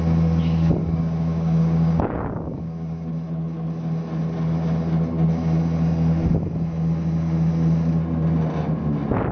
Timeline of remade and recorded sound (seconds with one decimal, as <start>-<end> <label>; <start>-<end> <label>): 0.0-0.8 recorded; 0.8-3.1 remade; 3.1-9.3 recorded